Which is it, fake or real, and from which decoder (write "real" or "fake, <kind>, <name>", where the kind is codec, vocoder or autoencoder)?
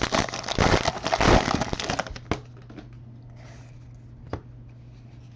real